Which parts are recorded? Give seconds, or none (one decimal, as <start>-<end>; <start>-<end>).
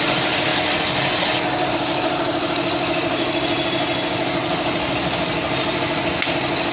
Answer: 0.0-4.4; 6.1-6.7